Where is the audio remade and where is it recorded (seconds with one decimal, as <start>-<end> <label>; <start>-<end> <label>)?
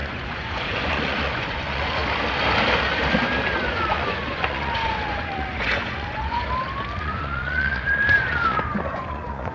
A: 0.0-2.0 remade; 2.0-3.7 recorded; 3.7-6.4 remade; 6.4-7.0 recorded; 7.0-9.5 remade